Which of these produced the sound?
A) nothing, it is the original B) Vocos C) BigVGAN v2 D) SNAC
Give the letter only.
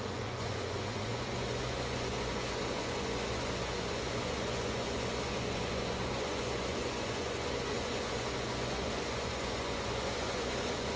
B